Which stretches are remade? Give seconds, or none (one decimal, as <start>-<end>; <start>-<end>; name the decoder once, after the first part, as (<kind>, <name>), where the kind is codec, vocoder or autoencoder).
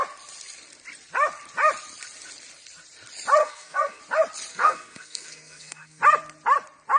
3.4-4.0 (codec, SNAC); 4.5-6.0